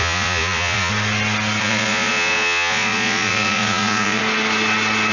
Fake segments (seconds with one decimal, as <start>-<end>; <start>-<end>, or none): 0.0-0.9; 1.6-4.2